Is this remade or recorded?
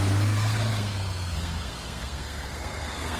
remade